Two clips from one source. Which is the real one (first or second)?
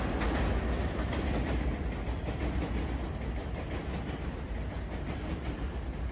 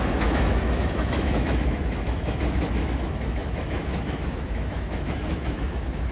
first